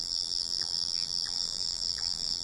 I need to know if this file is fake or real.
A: fake